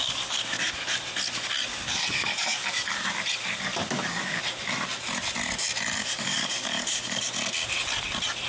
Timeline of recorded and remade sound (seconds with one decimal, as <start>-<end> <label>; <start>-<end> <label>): 0.0-0.7 remade; 0.7-1.7 recorded; 1.7-2.9 remade; 2.9-3.7 recorded; 3.7-4.4 remade; 4.4-6.0 recorded; 6.0-7.2 remade; 7.2-8.5 recorded